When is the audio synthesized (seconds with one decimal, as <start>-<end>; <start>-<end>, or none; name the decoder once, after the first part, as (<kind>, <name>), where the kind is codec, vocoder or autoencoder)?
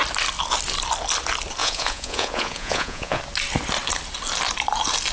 1.6-3.2 (vocoder, Vocos)